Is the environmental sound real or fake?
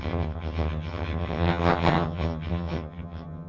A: fake